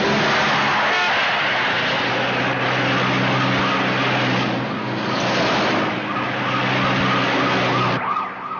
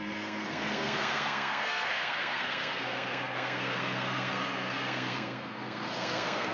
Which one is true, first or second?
first